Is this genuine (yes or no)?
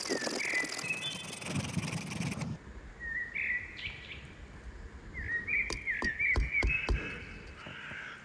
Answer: yes